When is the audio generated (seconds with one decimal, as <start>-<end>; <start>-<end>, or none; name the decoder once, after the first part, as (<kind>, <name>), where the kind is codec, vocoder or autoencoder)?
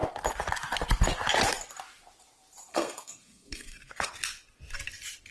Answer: 2.7-4.1 (codec, SNAC)